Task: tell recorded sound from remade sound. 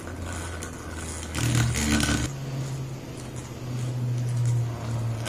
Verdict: recorded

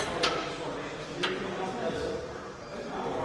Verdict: recorded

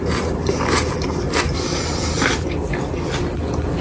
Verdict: recorded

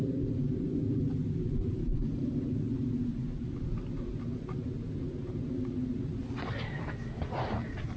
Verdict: recorded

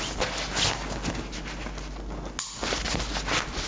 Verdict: recorded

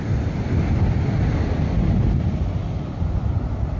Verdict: recorded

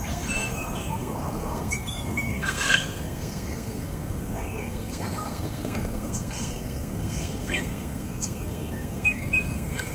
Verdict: remade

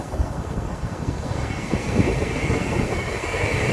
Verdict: remade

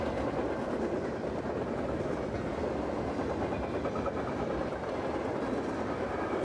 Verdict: recorded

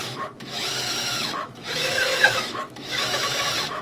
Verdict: remade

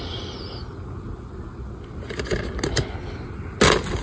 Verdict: recorded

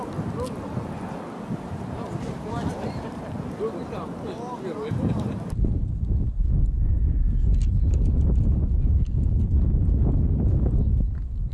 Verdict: recorded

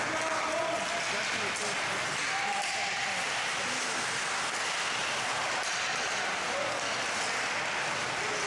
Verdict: recorded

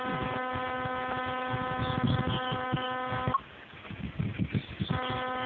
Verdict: recorded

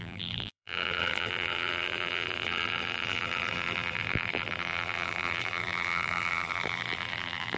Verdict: remade